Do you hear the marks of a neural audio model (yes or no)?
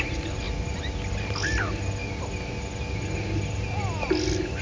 no